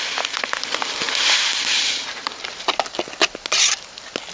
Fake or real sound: real